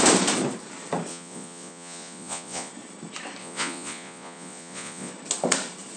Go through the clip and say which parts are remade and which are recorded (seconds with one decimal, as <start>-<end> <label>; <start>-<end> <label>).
0.0-1.1 recorded; 1.1-2.7 remade; 2.7-3.4 recorded; 3.4-5.1 remade; 5.1-6.0 recorded